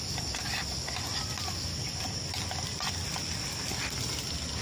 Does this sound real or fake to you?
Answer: real